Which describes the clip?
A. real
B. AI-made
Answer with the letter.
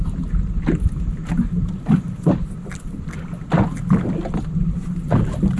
A